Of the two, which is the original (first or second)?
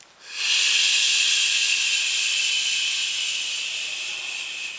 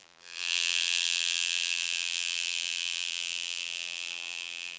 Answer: first